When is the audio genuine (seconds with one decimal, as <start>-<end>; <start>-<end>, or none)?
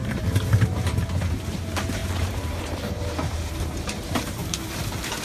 none